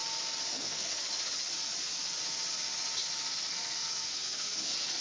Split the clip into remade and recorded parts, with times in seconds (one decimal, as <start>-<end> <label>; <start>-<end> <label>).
0.0-0.5 recorded; 0.5-1.1 remade; 1.1-3.3 recorded; 3.3-5.0 remade